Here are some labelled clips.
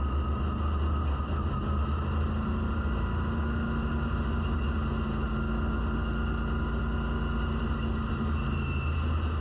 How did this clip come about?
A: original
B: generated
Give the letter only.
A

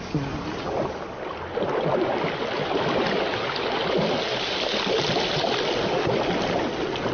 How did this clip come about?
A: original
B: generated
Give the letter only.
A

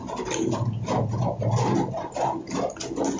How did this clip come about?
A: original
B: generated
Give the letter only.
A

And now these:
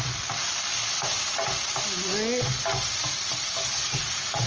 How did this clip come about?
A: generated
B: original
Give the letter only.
B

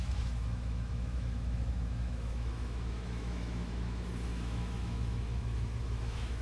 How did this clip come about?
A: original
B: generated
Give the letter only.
B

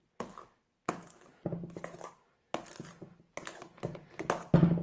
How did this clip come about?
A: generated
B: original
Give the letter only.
B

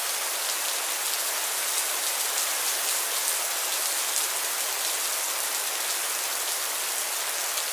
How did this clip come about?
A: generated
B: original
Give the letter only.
B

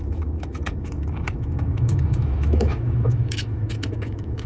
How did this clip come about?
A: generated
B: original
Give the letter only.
A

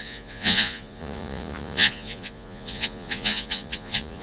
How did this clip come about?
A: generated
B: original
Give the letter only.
A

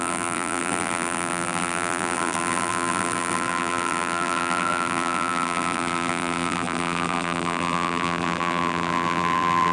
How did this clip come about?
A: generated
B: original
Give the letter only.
A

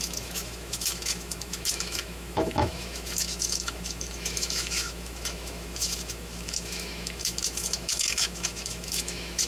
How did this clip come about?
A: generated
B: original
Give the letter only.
A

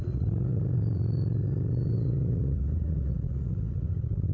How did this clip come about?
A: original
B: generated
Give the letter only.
B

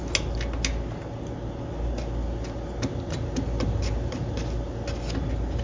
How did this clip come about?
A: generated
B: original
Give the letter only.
B